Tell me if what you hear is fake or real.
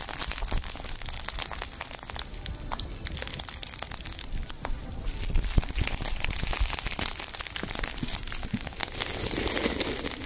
fake